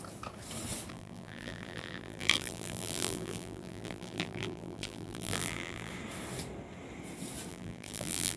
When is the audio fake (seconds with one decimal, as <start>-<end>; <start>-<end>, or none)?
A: 0.9-5.9; 7.5-8.4

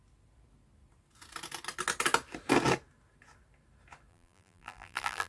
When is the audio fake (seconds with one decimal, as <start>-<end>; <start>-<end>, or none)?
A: 4.1-5.3